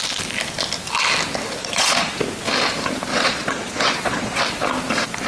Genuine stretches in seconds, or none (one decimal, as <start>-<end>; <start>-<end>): 0.0-1.6; 2.2-3.1; 4.4-5.3